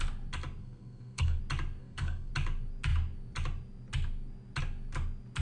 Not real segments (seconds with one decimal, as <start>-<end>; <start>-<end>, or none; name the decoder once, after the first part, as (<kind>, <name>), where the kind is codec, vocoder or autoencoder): 0.6-1.4 (codec, SNAC); 1.8-2.3